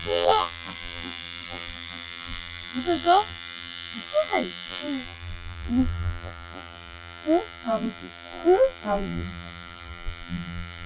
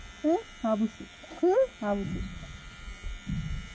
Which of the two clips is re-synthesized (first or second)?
first